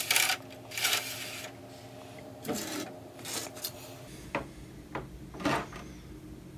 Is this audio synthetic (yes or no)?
no